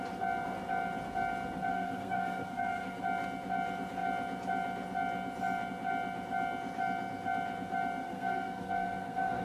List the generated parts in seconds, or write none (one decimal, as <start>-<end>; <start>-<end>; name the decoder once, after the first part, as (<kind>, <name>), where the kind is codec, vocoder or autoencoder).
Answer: 1.7-3.0 (codec, SNAC); 8.0-9.4